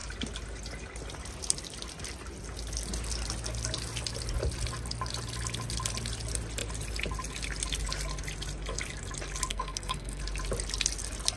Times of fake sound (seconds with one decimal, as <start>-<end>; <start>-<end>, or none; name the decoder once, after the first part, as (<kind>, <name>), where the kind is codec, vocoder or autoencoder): 9.5-10.2 (codec, SNAC)